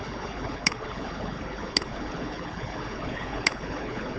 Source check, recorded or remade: remade